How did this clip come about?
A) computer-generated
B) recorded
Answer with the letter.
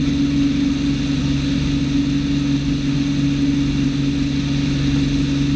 B